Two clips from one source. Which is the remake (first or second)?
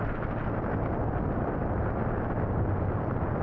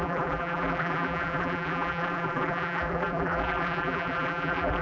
second